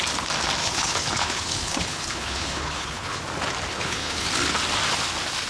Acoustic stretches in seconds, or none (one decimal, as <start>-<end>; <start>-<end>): 0.0-0.6; 3.2-3.7; 4.3-5.5